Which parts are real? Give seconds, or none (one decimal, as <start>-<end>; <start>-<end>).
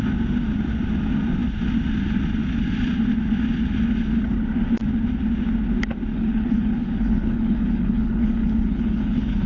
0.0-6.1